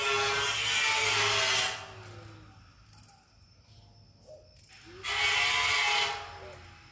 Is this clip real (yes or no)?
yes